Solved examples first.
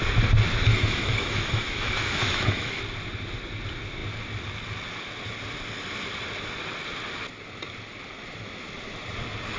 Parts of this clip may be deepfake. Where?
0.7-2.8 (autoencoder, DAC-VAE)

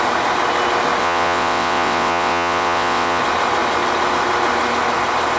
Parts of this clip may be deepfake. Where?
1.0-3.2 (vocoder, WaveNeXt)